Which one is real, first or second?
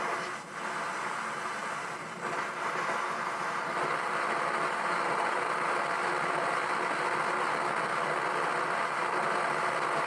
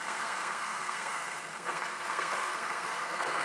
first